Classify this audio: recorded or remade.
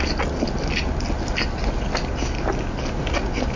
recorded